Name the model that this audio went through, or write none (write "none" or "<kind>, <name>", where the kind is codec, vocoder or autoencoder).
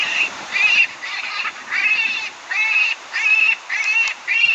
vocoder, BigVGAN v2